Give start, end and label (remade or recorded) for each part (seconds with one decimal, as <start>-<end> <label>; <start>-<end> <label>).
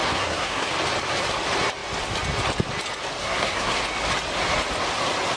0.0-0.7 remade; 0.7-3.2 recorded; 3.2-3.8 remade; 3.8-5.4 recorded